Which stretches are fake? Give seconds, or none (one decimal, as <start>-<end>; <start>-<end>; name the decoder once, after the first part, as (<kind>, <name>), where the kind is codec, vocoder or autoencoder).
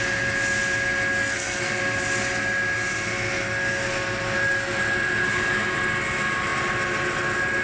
1.2-1.8 (codec, SNAC)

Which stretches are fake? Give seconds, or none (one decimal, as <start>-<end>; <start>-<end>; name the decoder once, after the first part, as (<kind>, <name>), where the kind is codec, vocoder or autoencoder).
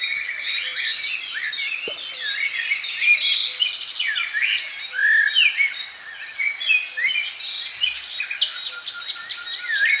none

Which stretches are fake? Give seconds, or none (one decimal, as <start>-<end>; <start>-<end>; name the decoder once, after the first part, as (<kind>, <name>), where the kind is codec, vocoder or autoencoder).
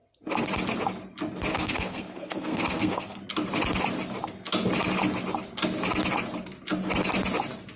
1.5-3.2 (codec, SNAC)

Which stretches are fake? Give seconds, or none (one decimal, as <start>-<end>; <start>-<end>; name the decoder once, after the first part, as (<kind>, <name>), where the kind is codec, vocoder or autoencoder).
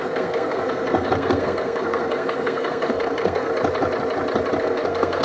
0.0-3.5 (codec, SNAC); 4.6-5.2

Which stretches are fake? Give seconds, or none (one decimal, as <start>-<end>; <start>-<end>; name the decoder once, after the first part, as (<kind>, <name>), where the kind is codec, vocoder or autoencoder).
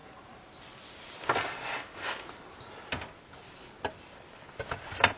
none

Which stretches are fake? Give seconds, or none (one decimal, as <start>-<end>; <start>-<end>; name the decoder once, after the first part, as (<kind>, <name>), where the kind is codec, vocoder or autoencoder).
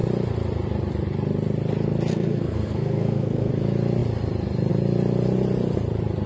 2.1-3.5 (codec, SNAC)